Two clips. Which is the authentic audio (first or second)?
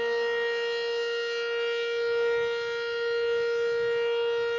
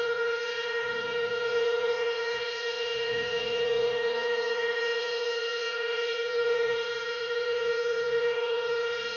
first